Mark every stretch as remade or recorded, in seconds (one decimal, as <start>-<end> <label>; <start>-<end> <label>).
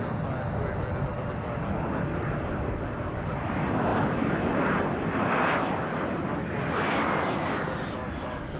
0.0-8.6 recorded